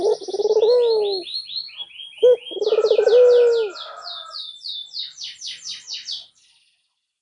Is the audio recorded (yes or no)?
yes